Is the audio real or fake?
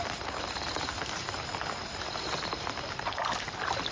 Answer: fake